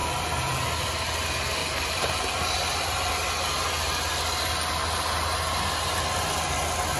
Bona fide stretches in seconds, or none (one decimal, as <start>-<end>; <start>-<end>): 0.6-1.6; 3.1-7.0